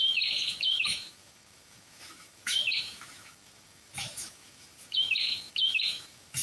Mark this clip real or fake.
fake